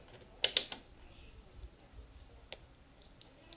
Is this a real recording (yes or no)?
yes